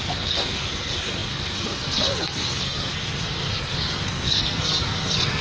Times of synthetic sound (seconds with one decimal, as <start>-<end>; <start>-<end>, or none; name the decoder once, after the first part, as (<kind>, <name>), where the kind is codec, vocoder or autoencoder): 0.0-5.4 (codec, SNAC)